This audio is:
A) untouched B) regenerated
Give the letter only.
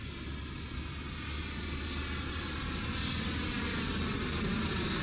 A